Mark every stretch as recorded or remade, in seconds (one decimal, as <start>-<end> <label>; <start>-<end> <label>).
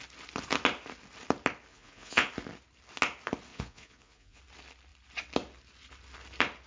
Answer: 0.0-1.7 recorded; 1.7-2.3 remade; 2.3-3.5 recorded; 3.5-4.4 remade; 4.4-6.7 recorded